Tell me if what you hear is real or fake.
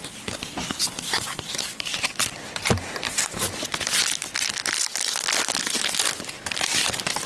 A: real